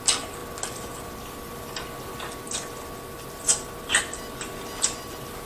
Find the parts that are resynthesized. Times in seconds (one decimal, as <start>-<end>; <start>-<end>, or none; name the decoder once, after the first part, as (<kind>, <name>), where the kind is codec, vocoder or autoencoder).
none